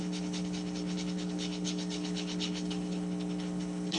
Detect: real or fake fake